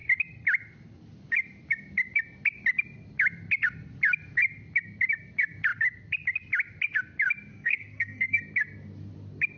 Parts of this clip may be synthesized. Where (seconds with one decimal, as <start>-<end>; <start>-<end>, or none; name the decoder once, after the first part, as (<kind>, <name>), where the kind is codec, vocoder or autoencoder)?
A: 7.5-8.4 (codec, SNAC)